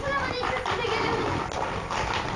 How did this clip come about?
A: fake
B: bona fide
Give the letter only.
B